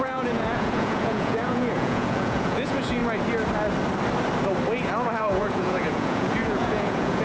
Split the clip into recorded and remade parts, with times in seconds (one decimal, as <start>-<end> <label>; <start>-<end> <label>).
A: 0.0-3.0 remade; 3.0-5.2 recorded; 5.2-7.2 remade